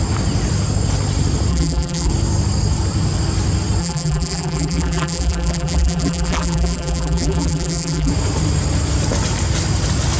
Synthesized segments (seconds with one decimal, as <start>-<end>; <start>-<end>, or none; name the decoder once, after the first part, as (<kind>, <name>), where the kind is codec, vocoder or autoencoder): 1.5-2.1 (vocoder, BigVGAN v2); 3.8-8.1